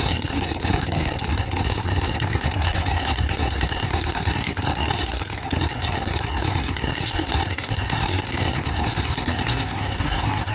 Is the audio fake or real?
fake